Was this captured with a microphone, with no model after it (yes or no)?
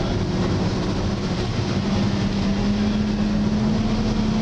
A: yes